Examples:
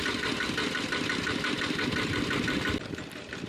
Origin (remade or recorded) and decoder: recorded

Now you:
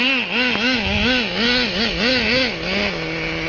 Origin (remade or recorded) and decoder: recorded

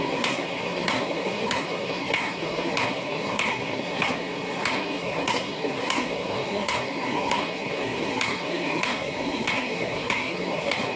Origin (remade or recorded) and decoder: remade, codec, SNAC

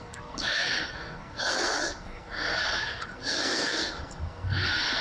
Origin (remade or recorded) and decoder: remade, codec, SNAC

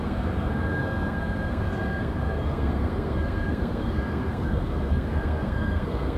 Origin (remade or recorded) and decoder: remade, codec, SNAC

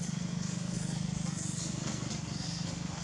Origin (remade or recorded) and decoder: remade, codec, SNAC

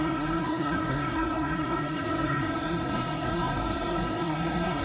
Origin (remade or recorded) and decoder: remade, codec, SNAC